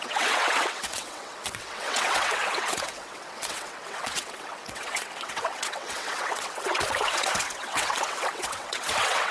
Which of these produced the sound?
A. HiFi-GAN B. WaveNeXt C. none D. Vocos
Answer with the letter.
B